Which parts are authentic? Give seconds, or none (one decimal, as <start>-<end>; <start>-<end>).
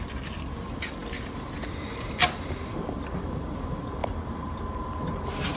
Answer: none